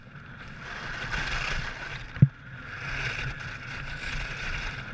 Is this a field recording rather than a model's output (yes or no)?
yes